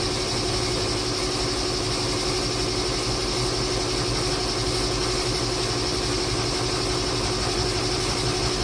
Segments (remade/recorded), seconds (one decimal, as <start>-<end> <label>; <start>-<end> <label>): 0.0-8.6 recorded